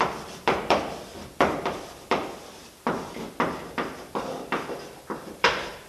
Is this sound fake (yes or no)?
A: yes